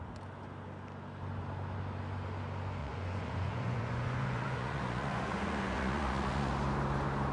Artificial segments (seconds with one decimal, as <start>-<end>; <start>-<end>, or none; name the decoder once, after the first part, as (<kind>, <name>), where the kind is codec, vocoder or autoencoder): 2.8-6.5 (vocoder, Vocos)